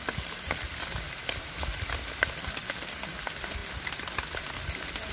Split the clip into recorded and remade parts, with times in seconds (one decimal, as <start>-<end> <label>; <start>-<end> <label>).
0.0-5.1 recorded